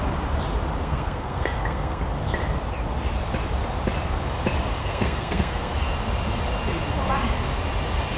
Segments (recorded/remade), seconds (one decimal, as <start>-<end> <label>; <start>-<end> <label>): 0.0-0.8 recorded; 0.8-2.0 remade; 2.0-4.8 recorded; 4.8-5.7 remade; 5.7-8.2 recorded